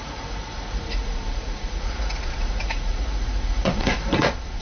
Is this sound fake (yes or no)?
yes